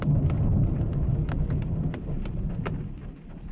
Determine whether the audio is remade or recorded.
recorded